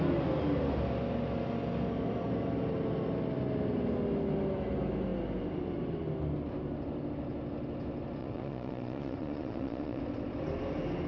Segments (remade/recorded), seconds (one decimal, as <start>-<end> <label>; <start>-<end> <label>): 0.0-8.2 recorded; 8.2-10.0 remade; 10.0-11.1 recorded

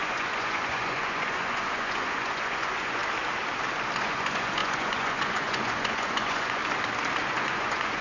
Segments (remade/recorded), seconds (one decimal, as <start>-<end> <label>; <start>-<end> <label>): 0.0-3.0 remade; 3.0-4.0 recorded; 4.0-6.6 remade; 6.6-7.3 recorded; 7.3-8.0 remade

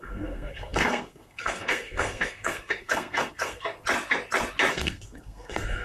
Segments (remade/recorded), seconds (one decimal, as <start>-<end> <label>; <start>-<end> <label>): 0.0-3.8 remade; 3.8-4.7 recorded; 4.7-5.8 remade